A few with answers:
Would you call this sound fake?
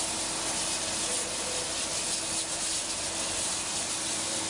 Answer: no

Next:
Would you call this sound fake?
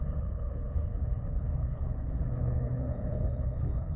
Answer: yes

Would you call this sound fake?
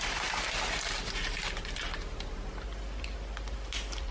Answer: no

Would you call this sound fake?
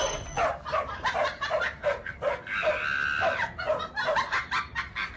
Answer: no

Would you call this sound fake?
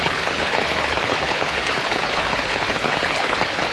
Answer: yes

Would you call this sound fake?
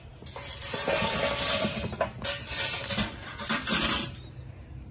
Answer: no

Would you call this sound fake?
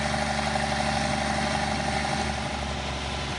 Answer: no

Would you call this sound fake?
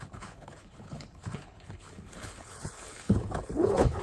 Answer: yes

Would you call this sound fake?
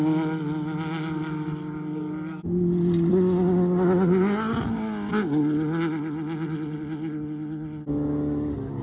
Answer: no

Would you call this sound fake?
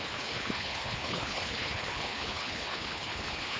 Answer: yes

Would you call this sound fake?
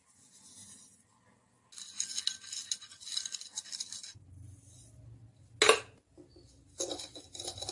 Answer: no